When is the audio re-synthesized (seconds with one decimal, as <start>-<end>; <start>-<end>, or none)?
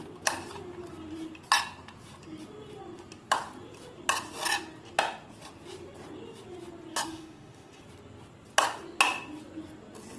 6.9-7.8